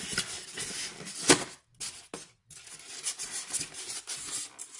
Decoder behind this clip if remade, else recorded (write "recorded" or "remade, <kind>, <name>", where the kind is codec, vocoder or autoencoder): recorded